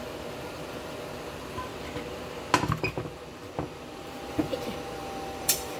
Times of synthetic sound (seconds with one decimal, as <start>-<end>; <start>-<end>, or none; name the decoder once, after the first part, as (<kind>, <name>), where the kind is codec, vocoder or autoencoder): 0.0-1.7 (vocoder, BigVGAN v2); 4.3-5.8